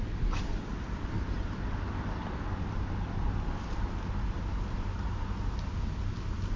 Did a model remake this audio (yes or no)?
no